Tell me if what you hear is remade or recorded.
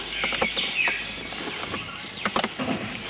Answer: recorded